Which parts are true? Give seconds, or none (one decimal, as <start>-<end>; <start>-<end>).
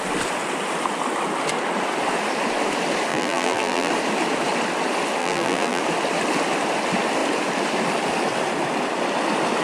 0.0-3.1; 3.9-5.2; 5.8-9.6